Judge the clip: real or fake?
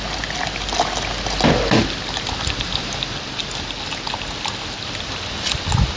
real